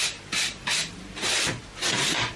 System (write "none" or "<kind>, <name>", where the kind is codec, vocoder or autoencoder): vocoder, BigVGAN v2